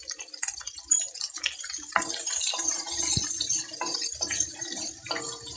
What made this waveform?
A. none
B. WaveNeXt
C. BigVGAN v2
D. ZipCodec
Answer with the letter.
C